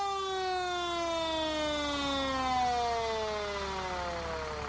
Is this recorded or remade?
recorded